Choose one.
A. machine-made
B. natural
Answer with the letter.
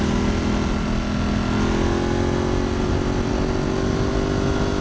B